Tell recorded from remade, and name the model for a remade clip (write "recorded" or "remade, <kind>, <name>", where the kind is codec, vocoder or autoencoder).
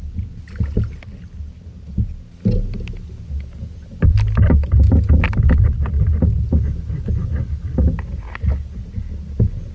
recorded